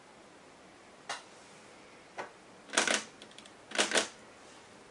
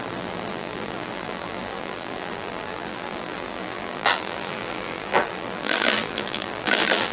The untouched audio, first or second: first